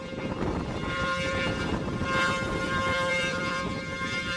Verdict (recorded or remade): remade